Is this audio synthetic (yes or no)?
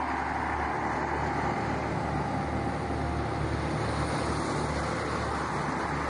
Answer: no